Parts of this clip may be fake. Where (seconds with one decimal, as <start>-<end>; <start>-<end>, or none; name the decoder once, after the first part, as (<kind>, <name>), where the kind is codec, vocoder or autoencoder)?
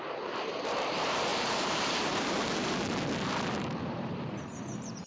0.0-5.1 (vocoder, BigVGAN v2)